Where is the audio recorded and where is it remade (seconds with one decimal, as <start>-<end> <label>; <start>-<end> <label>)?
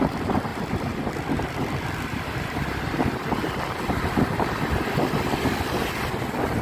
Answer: 0.0-0.5 recorded; 0.5-4.5 remade; 4.5-6.6 recorded